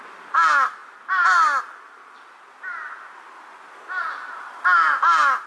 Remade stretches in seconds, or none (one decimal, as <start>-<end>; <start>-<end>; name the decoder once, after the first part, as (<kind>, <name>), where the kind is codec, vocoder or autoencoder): none